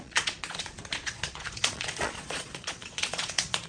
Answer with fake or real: fake